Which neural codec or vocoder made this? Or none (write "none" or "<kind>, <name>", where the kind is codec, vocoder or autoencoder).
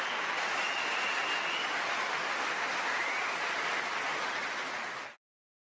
none